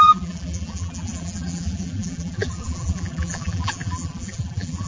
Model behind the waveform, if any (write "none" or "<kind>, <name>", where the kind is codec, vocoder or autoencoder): vocoder, BigVGAN v2